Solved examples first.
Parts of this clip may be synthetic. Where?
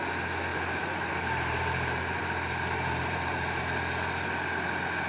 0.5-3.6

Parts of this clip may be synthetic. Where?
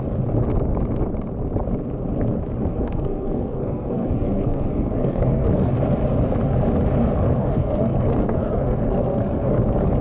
2.7-5.7; 7.0-9.6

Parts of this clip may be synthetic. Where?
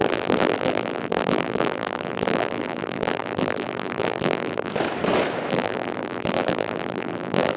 0.0-4.7; 5.5-7.6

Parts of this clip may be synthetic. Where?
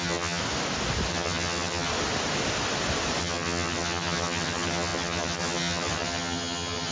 0.0-0.4; 1.1-1.9; 3.2-6.9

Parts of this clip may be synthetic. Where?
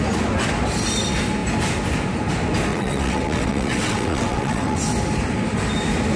2.7-4.8